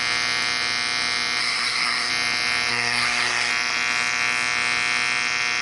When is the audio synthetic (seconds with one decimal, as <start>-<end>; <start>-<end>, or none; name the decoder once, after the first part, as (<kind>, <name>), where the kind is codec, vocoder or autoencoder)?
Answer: 1.4-2.1 (codec, SNAC); 2.7-3.5